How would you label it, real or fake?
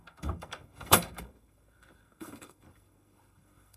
fake